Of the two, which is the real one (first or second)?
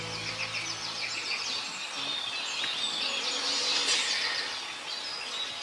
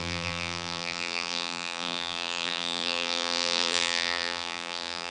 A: first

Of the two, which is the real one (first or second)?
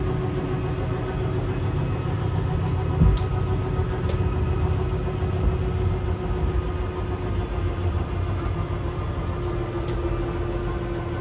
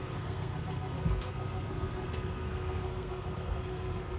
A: first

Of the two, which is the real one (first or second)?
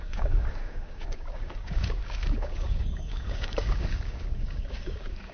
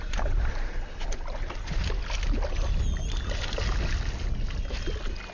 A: second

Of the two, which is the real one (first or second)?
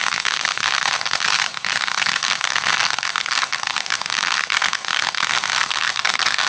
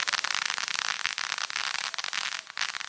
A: second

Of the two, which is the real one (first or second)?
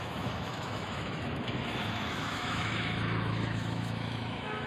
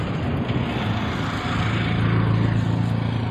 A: second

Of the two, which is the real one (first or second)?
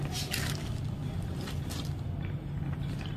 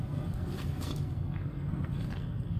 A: first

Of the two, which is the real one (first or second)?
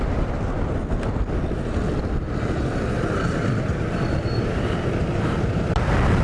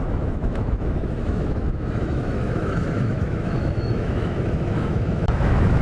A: first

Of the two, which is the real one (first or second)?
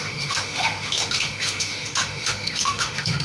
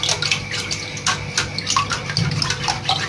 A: second